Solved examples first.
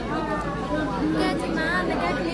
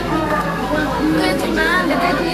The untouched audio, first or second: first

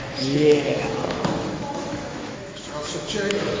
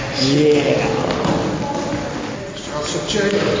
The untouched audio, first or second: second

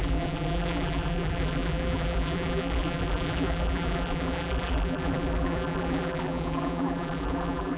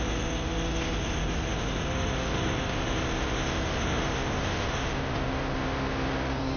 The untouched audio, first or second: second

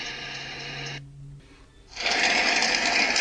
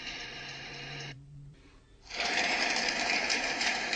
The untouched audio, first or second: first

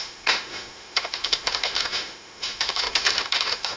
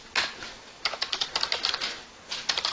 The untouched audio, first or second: second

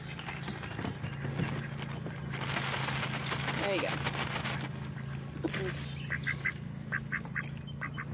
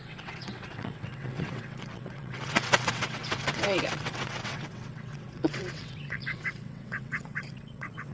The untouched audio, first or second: first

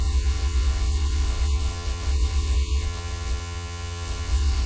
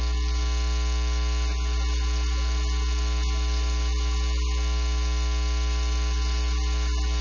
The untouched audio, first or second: second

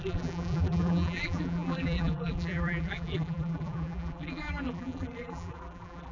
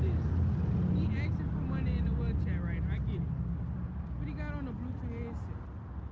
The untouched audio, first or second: second